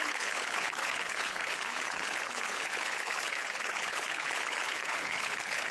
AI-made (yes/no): yes